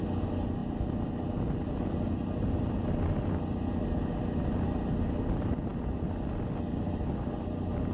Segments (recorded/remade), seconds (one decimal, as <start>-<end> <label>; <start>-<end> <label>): 0.0-7.9 recorded